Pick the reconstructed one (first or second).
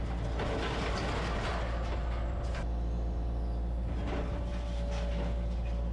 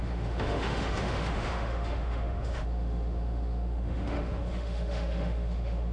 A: second